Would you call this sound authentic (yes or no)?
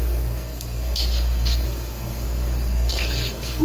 no